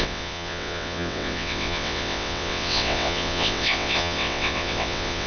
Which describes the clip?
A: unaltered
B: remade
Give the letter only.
B